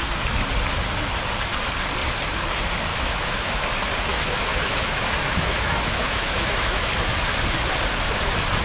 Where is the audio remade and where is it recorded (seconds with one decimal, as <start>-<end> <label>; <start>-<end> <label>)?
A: 0.0-2.9 recorded; 2.9-3.6 remade; 3.6-4.1 recorded; 4.1-6.9 remade; 6.9-8.6 recorded

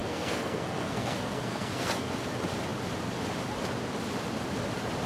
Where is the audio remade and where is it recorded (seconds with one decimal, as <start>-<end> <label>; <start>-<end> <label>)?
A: 0.0-2.1 remade; 2.1-5.1 recorded

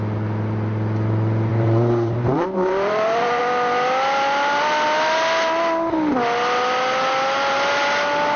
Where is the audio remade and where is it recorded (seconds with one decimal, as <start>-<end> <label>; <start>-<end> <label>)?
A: 0.0-1.5 recorded; 1.5-3.4 remade; 3.4-8.4 recorded

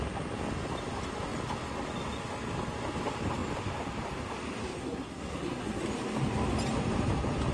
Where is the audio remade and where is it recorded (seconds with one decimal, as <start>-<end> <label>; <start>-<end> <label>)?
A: 0.0-4.8 recorded; 4.8-5.8 remade; 5.8-7.5 recorded